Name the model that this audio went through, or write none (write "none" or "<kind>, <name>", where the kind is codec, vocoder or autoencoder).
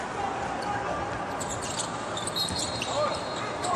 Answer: vocoder, BigVGAN v2